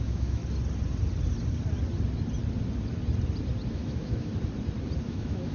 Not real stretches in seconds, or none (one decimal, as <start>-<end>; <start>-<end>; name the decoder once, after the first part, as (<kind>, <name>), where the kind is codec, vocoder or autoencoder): 0.0-0.4 (autoencoder, DAC-VAE); 3.7-4.3; 5.0-5.5